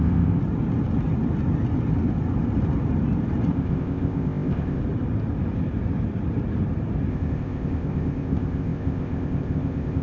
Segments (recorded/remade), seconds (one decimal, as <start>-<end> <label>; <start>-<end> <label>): 0.0-0.4 remade; 0.4-3.5 recorded; 3.5-4.8 remade; 4.8-7.1 recorded; 7.1-10.0 remade